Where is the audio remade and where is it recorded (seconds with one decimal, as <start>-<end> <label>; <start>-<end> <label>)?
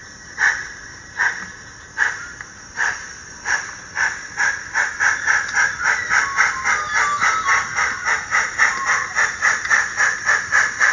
0.0-4.9 remade; 4.9-7.5 recorded; 7.5-10.9 remade